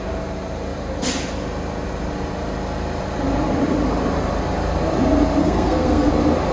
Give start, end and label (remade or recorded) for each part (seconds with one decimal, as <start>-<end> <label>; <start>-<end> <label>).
0.0-5.4 recorded; 5.4-6.1 remade; 6.1-6.5 recorded